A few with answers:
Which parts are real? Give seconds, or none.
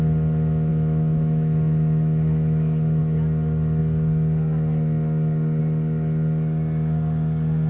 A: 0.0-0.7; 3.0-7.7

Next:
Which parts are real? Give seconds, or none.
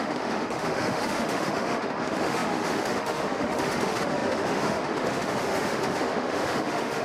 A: none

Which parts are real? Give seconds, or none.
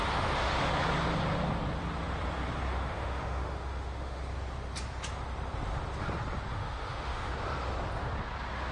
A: 0.7-2.7; 4.2-6.5; 7.3-8.7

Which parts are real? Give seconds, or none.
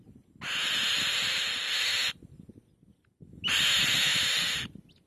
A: 0.0-5.1